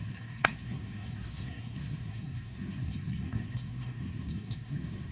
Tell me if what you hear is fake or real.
fake